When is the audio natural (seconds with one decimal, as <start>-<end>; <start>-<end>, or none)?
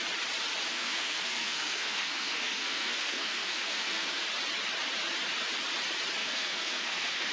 0.0-0.7; 4.2-6.2